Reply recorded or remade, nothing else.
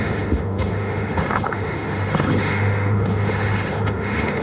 remade